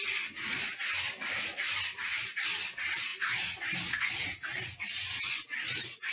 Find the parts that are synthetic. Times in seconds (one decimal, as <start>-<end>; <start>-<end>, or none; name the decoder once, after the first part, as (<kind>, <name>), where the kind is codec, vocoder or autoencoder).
none